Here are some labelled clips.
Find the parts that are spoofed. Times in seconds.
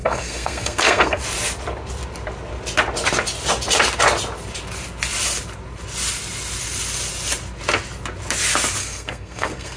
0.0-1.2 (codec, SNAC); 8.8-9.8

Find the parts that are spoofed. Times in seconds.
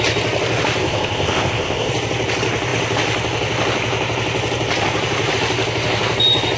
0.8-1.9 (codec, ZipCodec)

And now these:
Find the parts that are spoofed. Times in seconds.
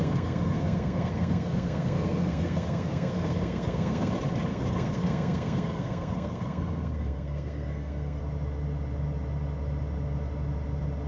0.0-4.1 (codec, SNAC); 4.5-8.2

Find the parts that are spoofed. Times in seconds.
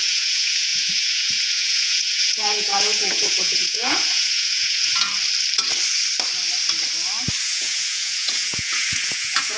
0.0-5.1 (vocoder, Vocos); 7.4-9.6